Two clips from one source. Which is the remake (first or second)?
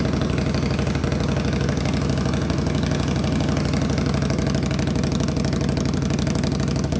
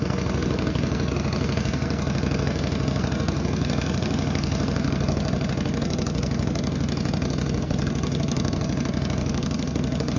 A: second